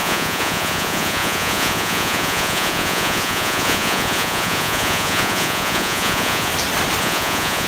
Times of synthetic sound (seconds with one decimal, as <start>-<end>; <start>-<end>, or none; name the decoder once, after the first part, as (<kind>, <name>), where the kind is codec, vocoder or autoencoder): 0.0-6.5 (vocoder, Vocos); 7.0-7.7